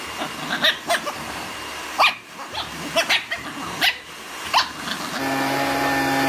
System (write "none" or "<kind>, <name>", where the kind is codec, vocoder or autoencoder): none